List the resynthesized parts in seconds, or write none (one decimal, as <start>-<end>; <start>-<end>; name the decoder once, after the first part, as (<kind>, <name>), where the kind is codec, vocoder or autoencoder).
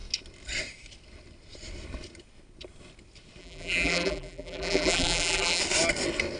3.4-5.6 (vocoder, BigVGAN v2)